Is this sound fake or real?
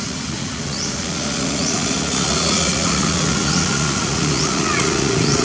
fake